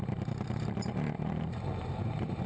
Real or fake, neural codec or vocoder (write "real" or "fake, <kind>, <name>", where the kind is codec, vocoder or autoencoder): fake, vocoder, BigVGAN v2